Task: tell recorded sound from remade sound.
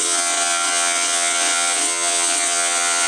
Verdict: remade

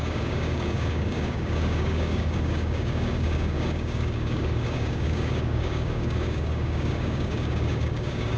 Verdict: remade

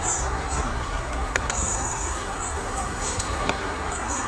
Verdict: remade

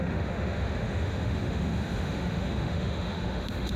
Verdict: remade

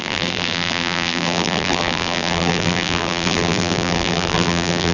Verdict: remade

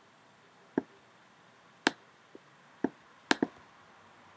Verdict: recorded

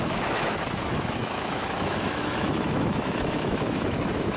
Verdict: remade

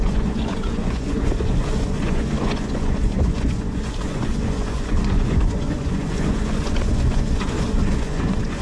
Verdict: remade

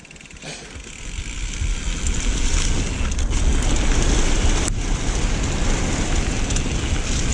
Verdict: recorded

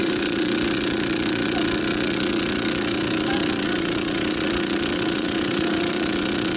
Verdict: remade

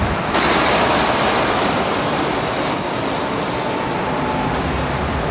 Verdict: recorded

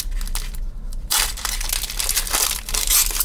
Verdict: recorded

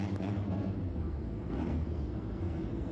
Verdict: remade